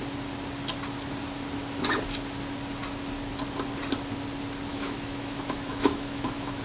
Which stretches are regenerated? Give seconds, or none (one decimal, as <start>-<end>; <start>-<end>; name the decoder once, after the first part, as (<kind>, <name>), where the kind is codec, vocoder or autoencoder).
4.7-6.6 (autoencoder, DAC-VAE)